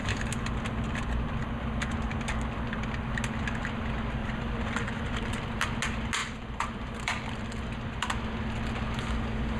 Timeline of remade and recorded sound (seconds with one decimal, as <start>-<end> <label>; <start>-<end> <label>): 0.0-4.2 recorded; 4.2-5.5 remade; 5.5-6.2 recorded; 6.2-7.7 remade; 7.7-9.6 recorded